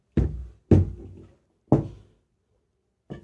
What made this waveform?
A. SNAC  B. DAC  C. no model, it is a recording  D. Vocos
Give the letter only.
C